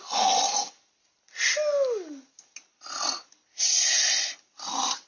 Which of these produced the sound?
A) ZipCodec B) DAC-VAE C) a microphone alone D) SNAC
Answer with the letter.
C